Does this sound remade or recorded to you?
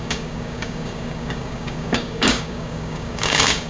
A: remade